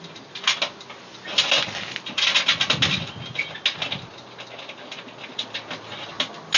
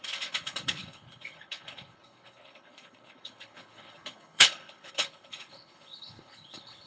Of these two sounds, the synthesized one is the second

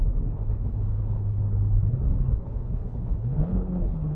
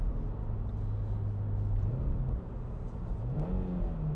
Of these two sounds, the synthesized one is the first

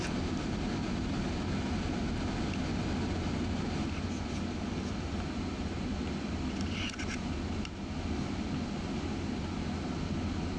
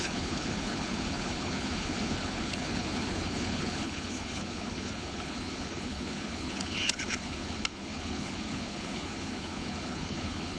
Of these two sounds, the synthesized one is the second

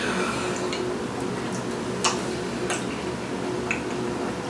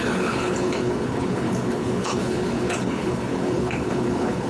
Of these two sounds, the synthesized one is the second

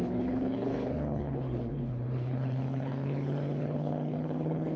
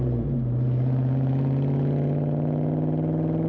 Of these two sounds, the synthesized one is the first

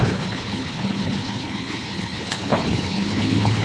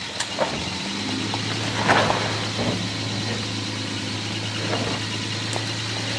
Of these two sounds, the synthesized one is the first